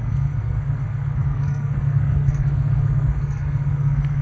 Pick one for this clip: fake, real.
fake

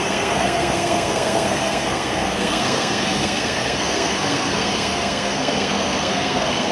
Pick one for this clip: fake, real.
fake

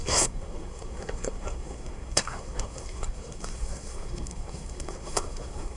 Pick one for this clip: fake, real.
fake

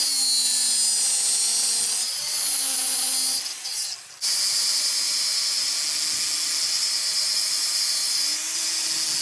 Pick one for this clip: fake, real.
real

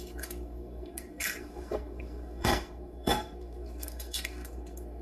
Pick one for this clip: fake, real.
fake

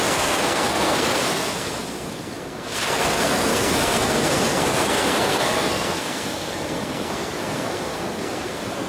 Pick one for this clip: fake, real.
fake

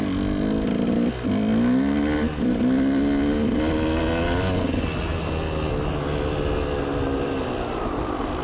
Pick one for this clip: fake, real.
real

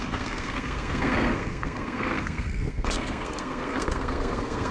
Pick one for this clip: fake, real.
fake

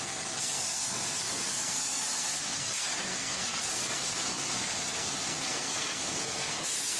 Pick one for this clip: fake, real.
fake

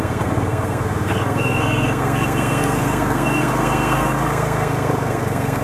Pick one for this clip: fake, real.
fake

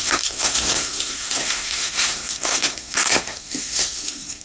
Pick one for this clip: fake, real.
fake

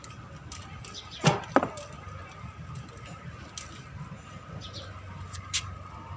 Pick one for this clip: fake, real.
real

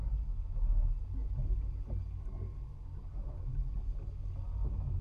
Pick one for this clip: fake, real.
real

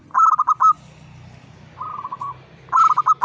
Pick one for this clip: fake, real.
real